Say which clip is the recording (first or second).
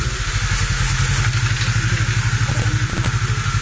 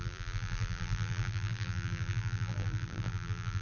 first